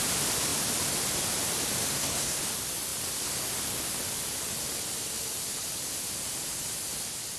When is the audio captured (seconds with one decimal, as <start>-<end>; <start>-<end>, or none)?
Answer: 0.0-1.9; 2.4-7.4